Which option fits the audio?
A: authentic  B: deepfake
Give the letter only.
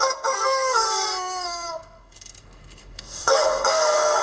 B